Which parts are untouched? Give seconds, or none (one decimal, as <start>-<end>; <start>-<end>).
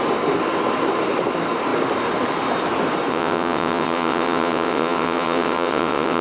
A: 0.0-3.1